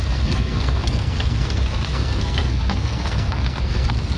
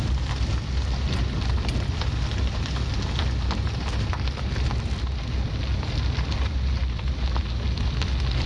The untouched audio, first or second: second